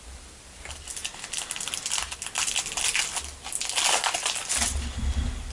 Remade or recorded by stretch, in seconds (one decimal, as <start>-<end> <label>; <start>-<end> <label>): 0.0-5.5 recorded